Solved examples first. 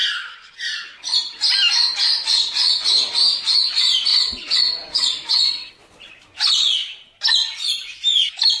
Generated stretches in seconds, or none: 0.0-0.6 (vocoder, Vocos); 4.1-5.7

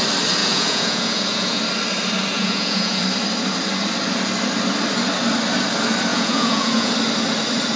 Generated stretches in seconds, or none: 0.4-1.6 (vocoder, Vocos); 2.3-3.0; 6.1-6.9

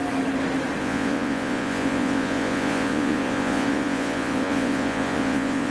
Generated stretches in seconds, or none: 0.8-5.7 (vocoder, Vocos)

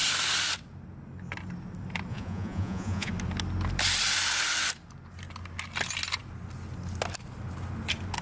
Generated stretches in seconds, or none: 2.1-3.1 (vocoder, Vocos)

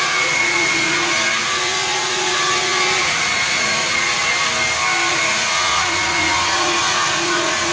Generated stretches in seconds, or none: 0.0-4.3 (vocoder, Vocos); 5.1-7.7

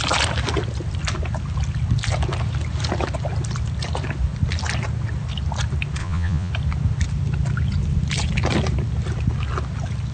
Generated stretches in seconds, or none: 6.0-6.5 (vocoder, Vocos)

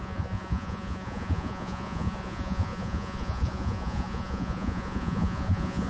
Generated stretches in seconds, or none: 0.0-5.9 (vocoder, Vocos)

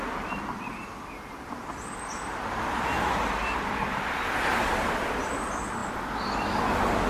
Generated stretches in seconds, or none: none